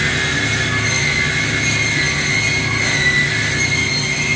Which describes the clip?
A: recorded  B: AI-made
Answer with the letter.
A